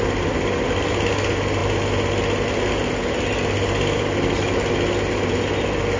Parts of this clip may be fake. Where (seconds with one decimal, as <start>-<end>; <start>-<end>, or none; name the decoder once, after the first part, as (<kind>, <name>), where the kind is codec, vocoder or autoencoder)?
none